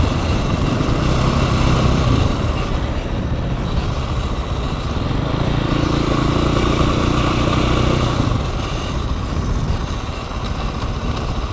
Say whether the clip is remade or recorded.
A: remade